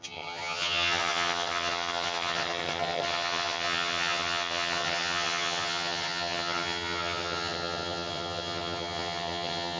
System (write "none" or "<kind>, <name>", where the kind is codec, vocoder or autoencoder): vocoder, HiFi-GAN